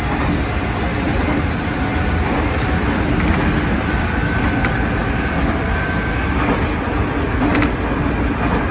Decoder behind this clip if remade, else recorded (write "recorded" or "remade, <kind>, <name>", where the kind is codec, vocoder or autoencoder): recorded